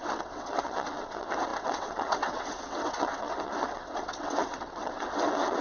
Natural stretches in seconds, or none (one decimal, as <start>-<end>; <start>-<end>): none